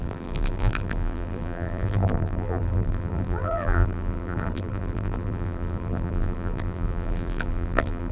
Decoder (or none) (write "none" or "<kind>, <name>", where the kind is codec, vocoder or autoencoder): vocoder, BigVGAN v2